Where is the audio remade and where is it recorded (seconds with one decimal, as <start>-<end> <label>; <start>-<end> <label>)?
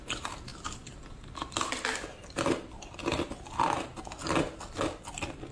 0.0-5.5 recorded